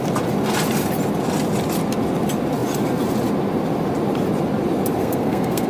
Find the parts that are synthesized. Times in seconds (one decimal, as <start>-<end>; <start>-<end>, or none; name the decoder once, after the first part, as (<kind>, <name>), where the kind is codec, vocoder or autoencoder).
5.0-5.7 (codec, SNAC)